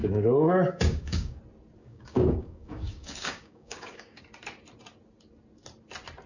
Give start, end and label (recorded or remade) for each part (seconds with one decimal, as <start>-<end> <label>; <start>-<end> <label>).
0.0-1.4 remade; 1.4-1.8 recorded; 1.8-4.2 remade; 4.2-6.3 recorded